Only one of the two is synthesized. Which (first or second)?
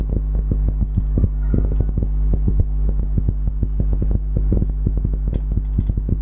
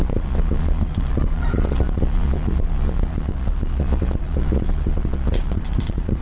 second